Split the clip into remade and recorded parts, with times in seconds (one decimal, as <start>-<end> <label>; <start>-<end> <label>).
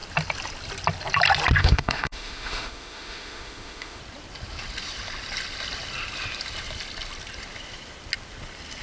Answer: 0.0-1.6 recorded; 1.6-4.0 remade; 4.0-8.8 recorded